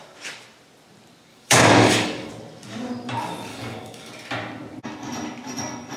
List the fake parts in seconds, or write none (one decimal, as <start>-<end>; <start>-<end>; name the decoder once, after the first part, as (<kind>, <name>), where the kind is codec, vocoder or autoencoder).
1.3-2.3 (codec, DAC); 3.5-4.1